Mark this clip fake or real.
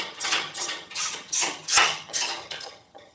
fake